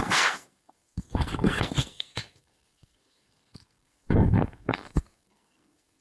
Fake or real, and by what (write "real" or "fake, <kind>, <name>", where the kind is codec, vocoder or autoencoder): fake, codec, SNAC